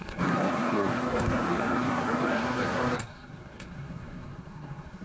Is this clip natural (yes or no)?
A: no